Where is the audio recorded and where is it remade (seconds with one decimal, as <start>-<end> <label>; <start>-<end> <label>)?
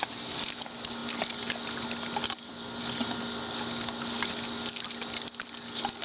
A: 0.0-6.0 recorded